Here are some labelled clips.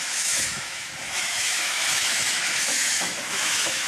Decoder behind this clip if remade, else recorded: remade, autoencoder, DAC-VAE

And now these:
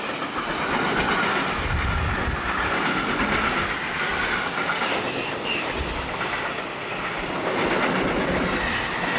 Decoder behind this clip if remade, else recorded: recorded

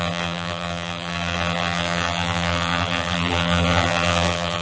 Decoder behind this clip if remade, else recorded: remade, vocoder, BigVGAN v2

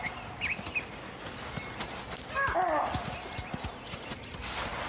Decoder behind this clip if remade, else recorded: recorded